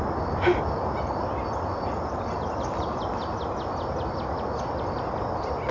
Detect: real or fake real